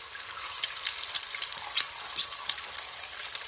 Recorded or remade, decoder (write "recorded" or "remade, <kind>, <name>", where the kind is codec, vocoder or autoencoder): recorded